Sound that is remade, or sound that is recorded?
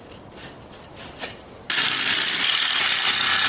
recorded